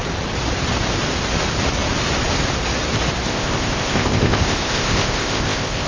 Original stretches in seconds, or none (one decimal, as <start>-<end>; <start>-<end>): 0.0-3.3